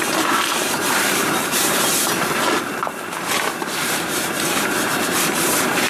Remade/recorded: remade